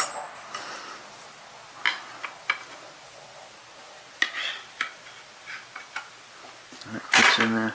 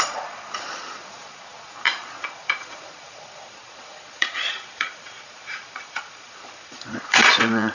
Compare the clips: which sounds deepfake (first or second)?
second